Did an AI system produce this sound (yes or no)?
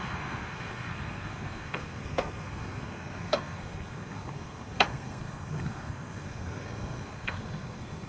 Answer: yes